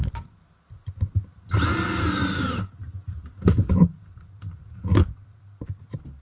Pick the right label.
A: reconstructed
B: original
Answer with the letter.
B